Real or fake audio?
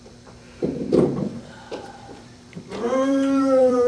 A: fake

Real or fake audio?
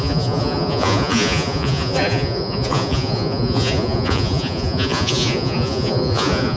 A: fake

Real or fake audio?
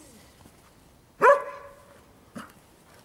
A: real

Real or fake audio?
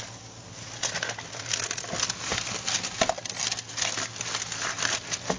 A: real